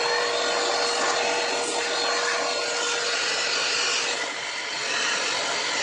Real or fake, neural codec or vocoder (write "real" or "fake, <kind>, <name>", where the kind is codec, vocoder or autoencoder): real